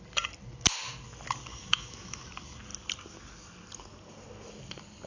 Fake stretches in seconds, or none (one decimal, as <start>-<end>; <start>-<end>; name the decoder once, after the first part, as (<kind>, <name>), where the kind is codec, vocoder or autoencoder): 1.5-2.2 (autoencoder, DAC-VAE)